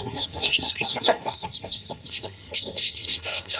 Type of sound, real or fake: fake